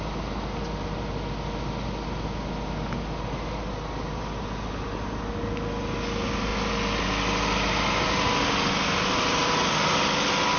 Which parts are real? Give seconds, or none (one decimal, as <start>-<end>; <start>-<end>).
0.0-10.6